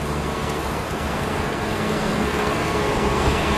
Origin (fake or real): fake